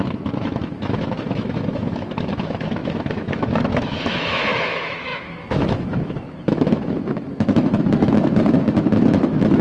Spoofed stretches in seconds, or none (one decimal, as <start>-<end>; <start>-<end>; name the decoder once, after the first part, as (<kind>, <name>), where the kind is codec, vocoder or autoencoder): 0.0-9.6 (autoencoder, DAC-VAE)